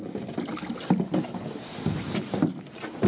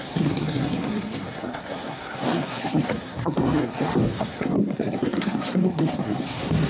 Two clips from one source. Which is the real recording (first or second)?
first